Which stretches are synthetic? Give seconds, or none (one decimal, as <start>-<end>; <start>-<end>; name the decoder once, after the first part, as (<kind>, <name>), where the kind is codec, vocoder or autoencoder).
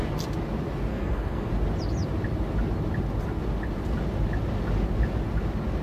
0.9-1.5 (codec, SNAC)